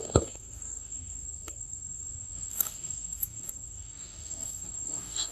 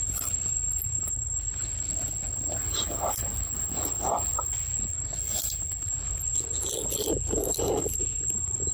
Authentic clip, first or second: second